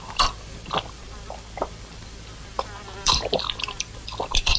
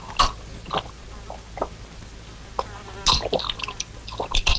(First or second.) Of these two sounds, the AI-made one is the first